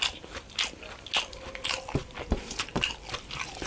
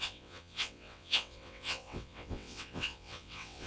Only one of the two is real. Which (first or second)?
first